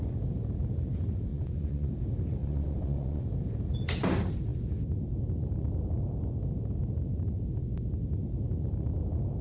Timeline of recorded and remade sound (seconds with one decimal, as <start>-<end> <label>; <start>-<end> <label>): 0.0-1.3 recorded; 1.3-1.9 remade; 1.9-2.4 recorded; 2.4-3.2 remade; 3.2-9.4 recorded